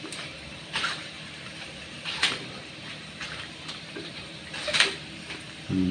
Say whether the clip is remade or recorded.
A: remade